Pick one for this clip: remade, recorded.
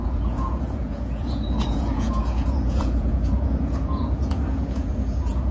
remade